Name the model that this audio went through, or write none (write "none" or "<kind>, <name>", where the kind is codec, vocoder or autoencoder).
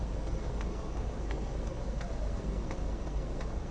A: codec, SNAC